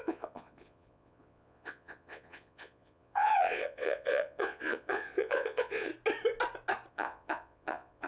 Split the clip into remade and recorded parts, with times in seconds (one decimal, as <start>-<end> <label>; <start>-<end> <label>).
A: 0.0-5.9 remade; 5.9-6.9 recorded; 6.9-8.1 remade